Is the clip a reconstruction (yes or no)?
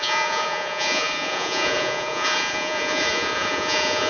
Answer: yes